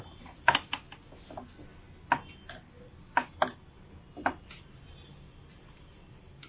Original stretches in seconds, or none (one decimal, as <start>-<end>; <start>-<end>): 0.0-6.5